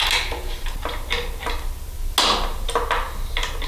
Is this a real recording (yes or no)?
yes